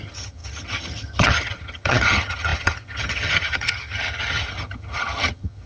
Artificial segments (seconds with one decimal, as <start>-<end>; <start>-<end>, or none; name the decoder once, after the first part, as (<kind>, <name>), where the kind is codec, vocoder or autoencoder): 0.0-5.7 (vocoder, HiFi-GAN)